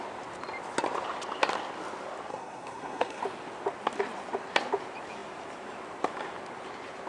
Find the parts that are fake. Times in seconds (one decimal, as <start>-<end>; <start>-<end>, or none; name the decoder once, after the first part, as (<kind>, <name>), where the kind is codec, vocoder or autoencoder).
2.3-3.2 (codec, SNAC)